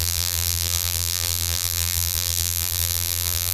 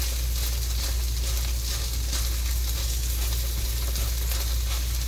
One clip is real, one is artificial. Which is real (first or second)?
second